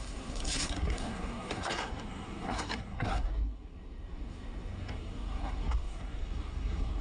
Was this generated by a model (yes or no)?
yes